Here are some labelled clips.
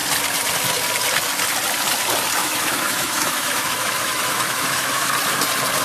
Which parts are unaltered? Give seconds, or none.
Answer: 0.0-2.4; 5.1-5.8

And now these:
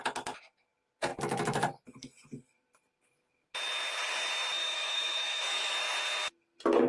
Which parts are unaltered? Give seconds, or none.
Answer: 0.0-4.6; 5.7-6.9